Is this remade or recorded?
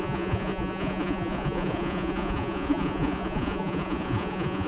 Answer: remade